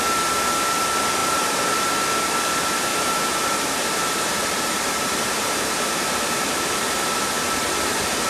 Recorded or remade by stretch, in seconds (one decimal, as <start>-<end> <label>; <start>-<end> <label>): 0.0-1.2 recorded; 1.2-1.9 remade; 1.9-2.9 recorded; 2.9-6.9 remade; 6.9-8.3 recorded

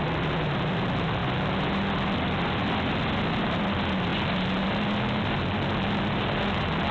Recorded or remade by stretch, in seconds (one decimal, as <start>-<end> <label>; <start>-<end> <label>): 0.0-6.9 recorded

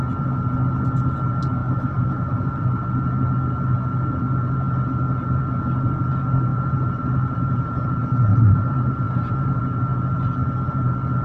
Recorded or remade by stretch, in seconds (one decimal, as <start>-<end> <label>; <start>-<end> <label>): 0.0-1.6 recorded; 1.6-2.5 remade; 2.5-6.5 recorded; 6.5-7.9 remade; 7.9-8.3 recorded; 8.3-9.6 remade; 9.6-11.2 recorded

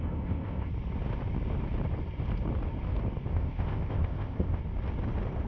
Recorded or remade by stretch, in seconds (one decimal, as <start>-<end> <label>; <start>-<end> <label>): 0.0-0.7 remade; 0.7-3.3 recorded; 3.3-4.6 remade; 4.6-5.5 recorded

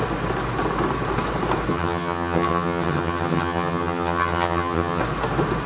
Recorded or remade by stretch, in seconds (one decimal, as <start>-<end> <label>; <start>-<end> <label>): 0.0-1.7 recorded; 1.7-5.0 remade; 5.0-5.7 recorded

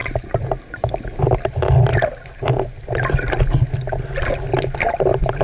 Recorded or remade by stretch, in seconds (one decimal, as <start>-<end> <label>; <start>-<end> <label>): 0.0-5.4 recorded